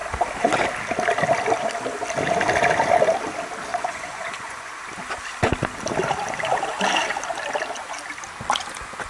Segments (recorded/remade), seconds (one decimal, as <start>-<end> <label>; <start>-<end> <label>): 0.0-3.7 recorded; 3.7-4.8 remade; 4.8-9.1 recorded